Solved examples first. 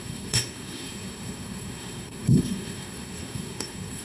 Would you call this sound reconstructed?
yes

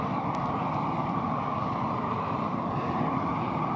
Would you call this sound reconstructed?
yes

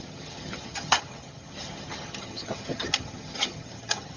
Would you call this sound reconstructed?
yes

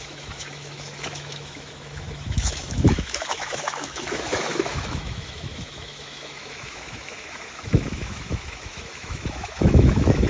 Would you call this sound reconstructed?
yes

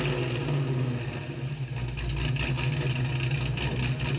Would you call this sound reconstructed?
no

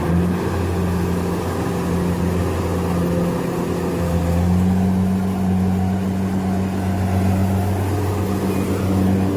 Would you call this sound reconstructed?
no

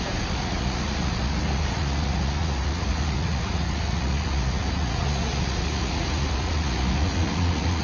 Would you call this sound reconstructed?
yes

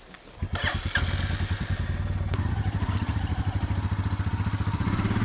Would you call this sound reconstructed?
no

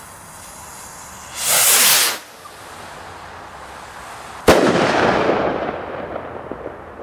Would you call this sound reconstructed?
no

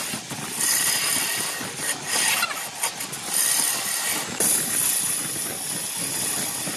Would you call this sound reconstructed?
no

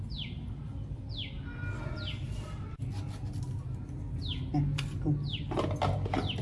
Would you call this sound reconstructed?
no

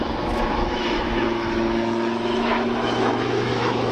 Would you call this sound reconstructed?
yes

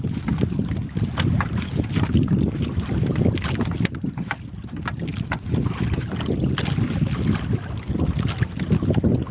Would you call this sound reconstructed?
no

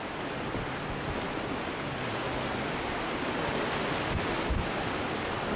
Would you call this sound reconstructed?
no